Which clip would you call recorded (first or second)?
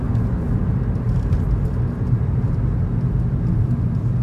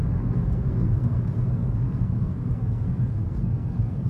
first